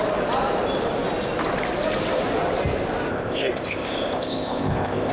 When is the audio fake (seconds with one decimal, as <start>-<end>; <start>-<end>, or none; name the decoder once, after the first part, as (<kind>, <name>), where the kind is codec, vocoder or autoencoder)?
3.1-5.1 (codec, ZipCodec)